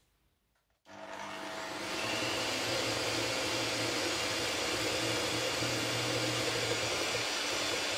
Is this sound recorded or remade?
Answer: recorded